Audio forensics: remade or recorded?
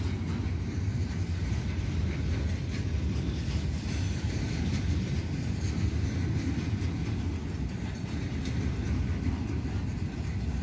recorded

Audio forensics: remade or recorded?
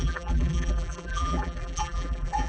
remade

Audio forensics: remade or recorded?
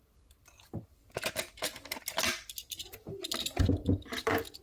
recorded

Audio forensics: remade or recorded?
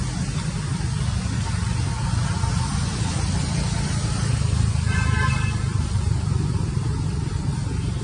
recorded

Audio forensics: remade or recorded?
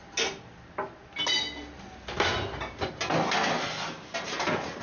recorded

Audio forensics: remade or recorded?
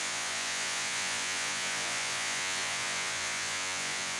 remade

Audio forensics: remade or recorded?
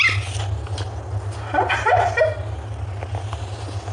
recorded